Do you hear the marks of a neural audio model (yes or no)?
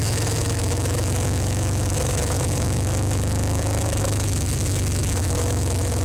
yes